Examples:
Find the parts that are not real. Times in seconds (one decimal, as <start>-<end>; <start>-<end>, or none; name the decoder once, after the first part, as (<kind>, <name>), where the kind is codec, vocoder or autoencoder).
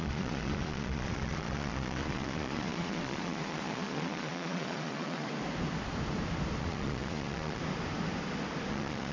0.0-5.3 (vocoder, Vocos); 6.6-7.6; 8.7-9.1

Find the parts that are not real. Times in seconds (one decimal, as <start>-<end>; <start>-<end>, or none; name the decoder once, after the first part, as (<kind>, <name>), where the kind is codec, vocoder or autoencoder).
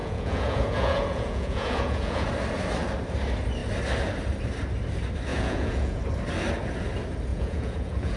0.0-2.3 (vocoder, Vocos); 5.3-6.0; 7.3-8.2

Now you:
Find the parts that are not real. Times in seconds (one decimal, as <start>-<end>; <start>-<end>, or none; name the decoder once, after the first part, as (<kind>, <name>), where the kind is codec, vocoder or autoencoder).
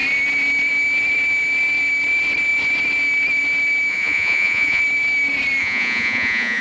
3.9-4.8 (vocoder, Vocos); 5.6-6.6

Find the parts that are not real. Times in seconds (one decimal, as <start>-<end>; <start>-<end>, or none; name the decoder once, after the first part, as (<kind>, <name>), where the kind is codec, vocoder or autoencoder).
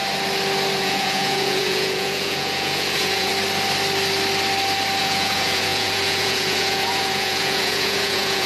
0.8-3.3 (vocoder, Vocos); 5.0-8.5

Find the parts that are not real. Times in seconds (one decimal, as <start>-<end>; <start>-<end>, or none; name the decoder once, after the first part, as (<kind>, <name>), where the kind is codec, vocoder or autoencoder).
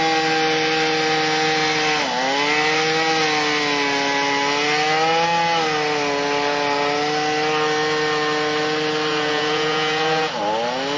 9.1-10.3 (vocoder, Vocos)